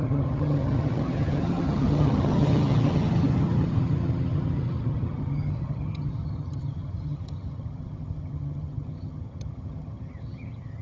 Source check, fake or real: fake